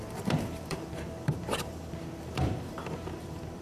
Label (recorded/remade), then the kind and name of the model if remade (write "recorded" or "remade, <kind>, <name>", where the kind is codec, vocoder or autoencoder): remade, vocoder, BigVGAN v2